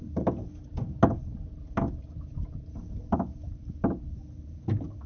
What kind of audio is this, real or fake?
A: real